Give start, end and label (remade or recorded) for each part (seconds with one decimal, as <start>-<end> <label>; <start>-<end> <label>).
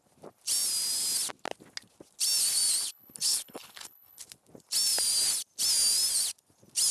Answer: 0.0-2.8 recorded; 2.8-4.2 remade; 4.2-6.9 recorded